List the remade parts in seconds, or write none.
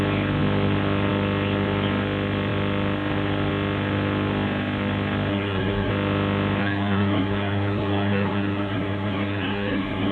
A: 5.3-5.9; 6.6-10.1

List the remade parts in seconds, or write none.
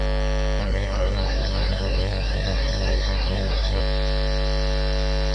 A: 0.6-3.8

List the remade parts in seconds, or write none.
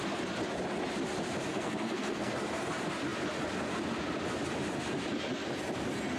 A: 1.5-2.3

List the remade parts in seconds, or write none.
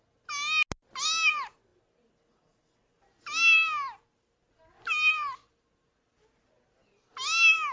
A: none